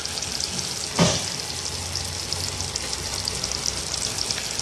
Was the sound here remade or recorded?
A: recorded